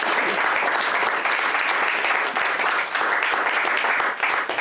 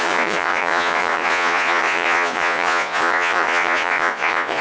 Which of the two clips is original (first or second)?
first